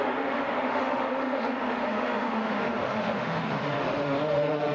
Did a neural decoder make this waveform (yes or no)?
yes